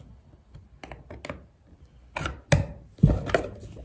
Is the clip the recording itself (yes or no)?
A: yes